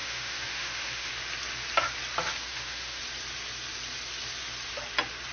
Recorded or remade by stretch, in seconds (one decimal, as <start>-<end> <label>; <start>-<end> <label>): 0.0-1.1 remade; 1.1-2.5 recorded; 2.5-3.0 remade; 3.0-5.3 recorded